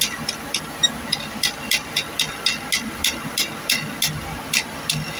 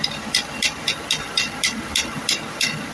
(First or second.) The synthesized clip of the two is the second